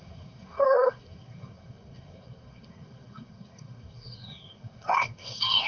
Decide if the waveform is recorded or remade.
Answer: remade